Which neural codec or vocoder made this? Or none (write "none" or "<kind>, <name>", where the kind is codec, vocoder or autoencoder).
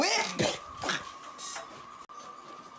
none